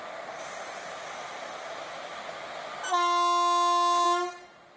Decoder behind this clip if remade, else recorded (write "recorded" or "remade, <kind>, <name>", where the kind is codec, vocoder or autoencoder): recorded